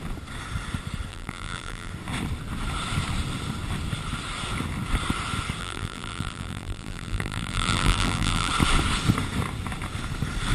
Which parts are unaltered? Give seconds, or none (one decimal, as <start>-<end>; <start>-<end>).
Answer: 0.0-1.1; 1.9-5.6; 8.5-10.5